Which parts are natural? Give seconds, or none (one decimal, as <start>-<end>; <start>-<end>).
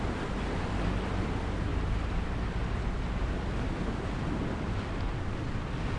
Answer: 0.0-6.0